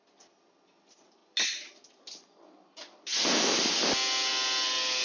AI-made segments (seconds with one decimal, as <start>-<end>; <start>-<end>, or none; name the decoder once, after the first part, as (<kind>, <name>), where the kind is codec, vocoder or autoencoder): none

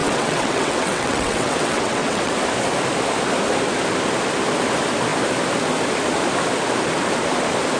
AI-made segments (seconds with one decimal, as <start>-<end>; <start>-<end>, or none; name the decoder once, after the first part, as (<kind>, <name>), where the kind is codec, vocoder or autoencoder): 0.0-2.3 (vocoder, WaveNeXt)

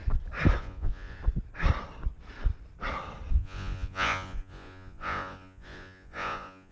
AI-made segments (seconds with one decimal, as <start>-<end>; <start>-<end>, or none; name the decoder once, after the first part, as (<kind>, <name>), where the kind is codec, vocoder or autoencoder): 0.6-1.2 (vocoder, Vocos); 3.3-6.7

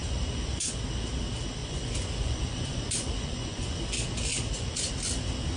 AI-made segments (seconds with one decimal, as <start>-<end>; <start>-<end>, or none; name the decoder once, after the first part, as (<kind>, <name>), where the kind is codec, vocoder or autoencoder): 0.0-0.7 (vocoder, Vocos); 1.6-3.8; 4.3-4.9

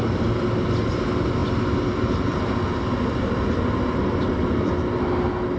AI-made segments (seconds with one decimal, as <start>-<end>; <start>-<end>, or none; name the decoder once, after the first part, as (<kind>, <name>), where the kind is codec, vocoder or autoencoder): none

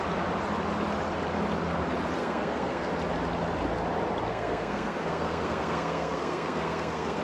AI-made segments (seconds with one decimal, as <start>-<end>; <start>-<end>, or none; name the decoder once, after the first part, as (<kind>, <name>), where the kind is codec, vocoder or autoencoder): 2.2-2.9 (codec, SNAC); 4.3-7.2

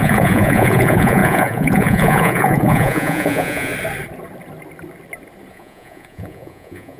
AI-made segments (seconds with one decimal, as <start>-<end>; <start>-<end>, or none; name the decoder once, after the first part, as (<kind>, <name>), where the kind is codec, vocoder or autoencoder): 0.0-3.7 (vocoder, Vocos); 5.5-7.0